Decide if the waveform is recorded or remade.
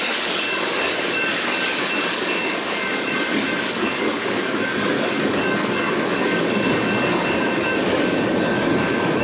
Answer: remade